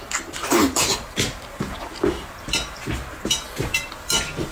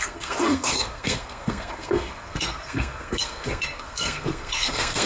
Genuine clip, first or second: first